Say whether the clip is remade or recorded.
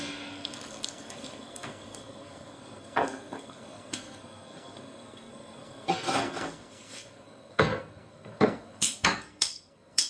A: remade